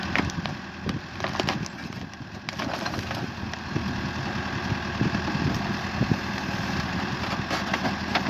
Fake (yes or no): no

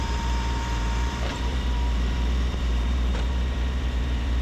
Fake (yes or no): yes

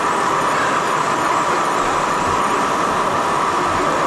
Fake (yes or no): no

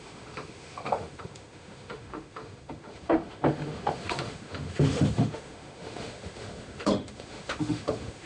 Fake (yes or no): yes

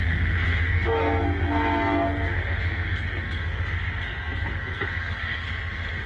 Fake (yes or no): yes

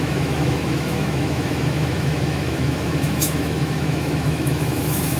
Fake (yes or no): yes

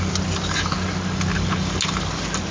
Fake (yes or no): no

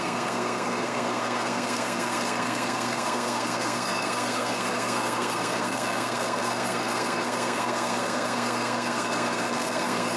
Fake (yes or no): yes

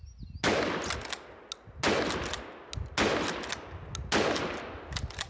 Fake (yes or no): no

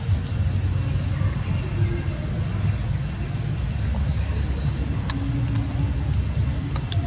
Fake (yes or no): no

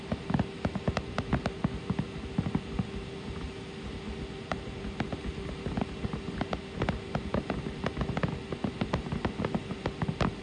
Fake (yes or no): no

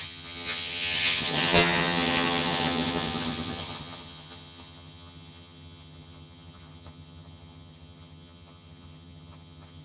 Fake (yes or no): yes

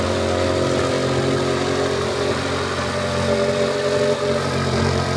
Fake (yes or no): yes